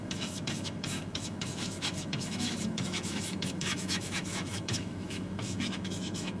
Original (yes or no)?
no